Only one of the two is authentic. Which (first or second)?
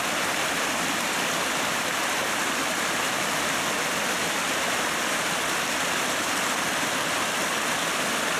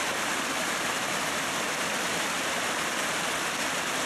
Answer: first